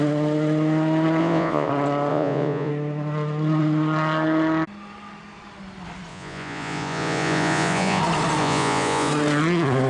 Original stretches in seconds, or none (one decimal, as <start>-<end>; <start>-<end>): 0.0-1.2; 1.7-2.1; 2.7-6.1; 8.0-8.4; 9.1-9.9